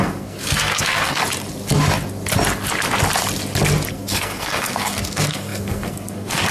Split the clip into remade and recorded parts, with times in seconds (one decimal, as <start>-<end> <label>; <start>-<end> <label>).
0.0-1.2 remade; 1.2-3.9 recorded; 3.9-6.5 remade